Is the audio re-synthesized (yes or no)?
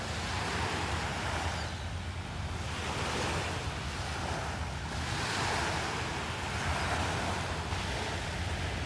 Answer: no